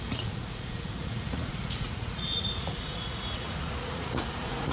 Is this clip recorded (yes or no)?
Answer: no